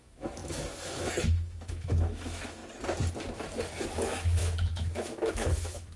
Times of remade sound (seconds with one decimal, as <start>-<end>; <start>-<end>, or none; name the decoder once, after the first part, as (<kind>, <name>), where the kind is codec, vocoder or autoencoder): 0.0-2.6 (autoencoder, DAC-VAE); 3.9-6.0